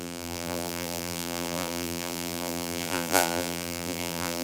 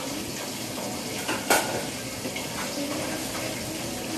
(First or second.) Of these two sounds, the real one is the second